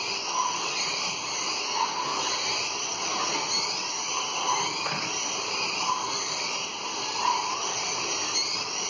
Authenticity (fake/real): real